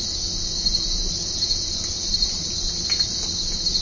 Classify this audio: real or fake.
real